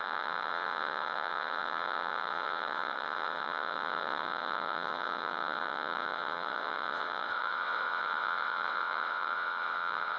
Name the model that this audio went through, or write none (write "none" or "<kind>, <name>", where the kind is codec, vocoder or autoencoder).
vocoder, WaveNeXt